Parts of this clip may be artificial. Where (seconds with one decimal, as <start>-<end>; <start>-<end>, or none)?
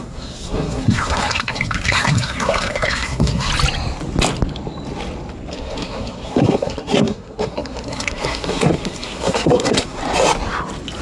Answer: 0.0-3.5; 5.5-10.0